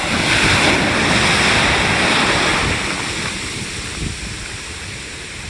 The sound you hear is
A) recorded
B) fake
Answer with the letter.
A